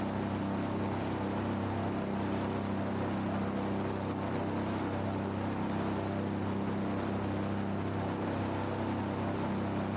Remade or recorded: recorded